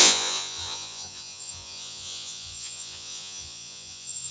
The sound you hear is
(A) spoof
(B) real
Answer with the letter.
A